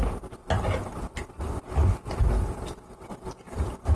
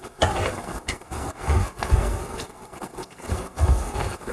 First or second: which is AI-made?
second